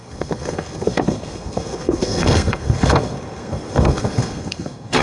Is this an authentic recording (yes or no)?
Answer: no